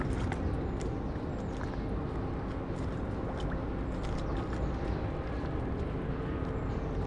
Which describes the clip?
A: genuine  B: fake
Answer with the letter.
A